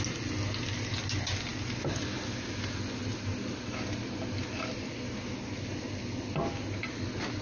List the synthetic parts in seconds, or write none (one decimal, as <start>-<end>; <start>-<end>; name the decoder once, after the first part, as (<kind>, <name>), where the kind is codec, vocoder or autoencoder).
none